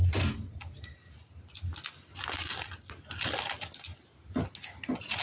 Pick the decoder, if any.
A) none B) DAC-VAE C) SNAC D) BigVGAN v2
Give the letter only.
A